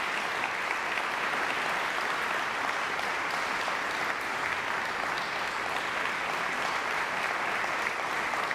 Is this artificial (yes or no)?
no